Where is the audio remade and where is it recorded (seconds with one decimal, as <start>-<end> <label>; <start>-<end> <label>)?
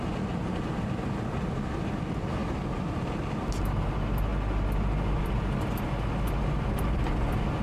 0.0-7.6 recorded